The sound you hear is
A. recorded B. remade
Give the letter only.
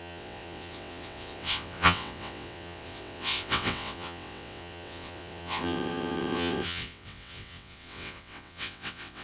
B